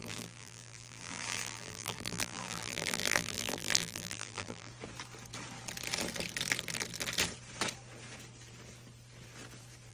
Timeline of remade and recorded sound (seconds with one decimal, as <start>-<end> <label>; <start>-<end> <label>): 0.0-4.7 remade; 4.7-9.9 recorded